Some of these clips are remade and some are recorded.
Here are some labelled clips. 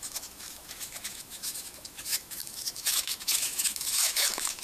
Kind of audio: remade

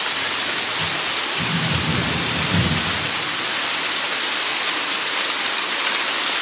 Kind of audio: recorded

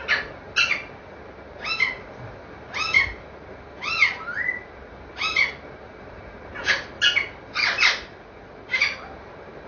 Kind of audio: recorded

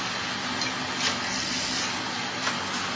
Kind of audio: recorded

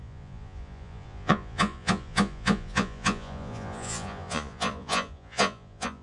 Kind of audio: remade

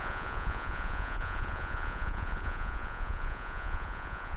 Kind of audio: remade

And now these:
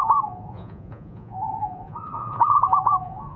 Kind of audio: remade